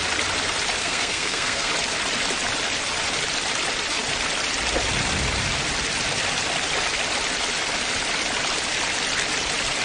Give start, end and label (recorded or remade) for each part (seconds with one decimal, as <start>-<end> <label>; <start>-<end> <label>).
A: 0.0-0.8 recorded; 0.8-1.7 remade; 1.7-9.8 recorded